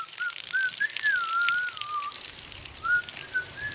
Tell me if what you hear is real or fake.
real